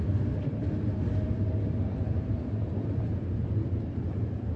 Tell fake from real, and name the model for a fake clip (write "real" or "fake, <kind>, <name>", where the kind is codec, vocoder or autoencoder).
real